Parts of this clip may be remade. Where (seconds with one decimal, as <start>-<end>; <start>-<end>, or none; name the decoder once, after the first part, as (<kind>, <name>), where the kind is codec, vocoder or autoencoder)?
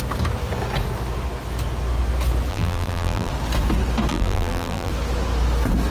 2.5-3.3 (vocoder, BigVGAN v2); 4.1-4.9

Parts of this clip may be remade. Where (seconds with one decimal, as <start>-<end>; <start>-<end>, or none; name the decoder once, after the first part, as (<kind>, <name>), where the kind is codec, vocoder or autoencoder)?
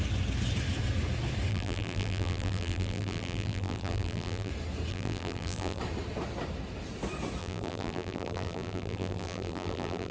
1.5-4.5 (vocoder, BigVGAN v2); 4.9-5.8; 7.4-10.1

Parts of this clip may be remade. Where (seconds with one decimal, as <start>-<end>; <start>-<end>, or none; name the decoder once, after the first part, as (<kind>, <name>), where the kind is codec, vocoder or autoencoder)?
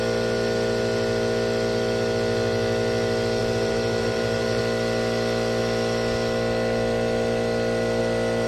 3.4-4.6 (vocoder, BigVGAN v2)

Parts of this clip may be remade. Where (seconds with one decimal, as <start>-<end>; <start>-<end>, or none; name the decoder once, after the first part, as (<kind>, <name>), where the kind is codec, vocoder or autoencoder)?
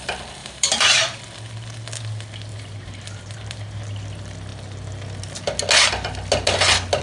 0.4-1.2 (vocoder, BigVGAN v2); 2.5-3.8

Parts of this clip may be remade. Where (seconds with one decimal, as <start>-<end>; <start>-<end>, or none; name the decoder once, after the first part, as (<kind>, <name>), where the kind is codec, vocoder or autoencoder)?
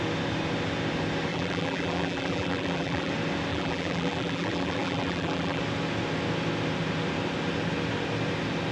1.3-3.1 (vocoder, BigVGAN v2); 3.5-5.6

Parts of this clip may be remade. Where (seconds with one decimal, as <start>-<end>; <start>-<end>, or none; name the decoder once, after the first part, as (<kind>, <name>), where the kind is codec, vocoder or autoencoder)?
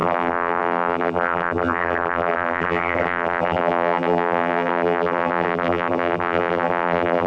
0.0-7.3 (vocoder, BigVGAN v2)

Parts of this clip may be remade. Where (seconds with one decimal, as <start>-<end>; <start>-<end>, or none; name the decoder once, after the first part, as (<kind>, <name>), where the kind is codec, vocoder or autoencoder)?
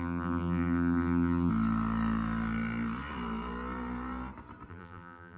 0.0-1.5 (vocoder, BigVGAN v2); 4.7-5.4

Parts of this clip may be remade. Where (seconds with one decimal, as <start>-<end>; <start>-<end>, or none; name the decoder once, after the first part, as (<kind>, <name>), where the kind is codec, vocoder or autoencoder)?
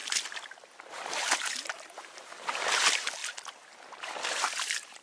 1.1-3.2 (vocoder, BigVGAN v2); 4.3-5.0